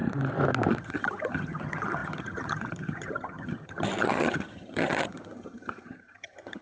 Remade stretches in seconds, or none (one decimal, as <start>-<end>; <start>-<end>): 0.8-6.6